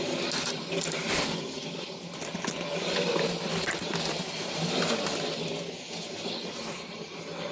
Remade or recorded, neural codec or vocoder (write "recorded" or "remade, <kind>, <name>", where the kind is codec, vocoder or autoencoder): recorded